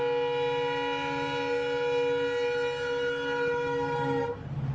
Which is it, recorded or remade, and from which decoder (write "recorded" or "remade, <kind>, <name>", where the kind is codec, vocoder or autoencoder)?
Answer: recorded